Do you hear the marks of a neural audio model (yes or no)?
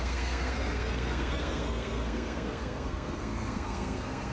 yes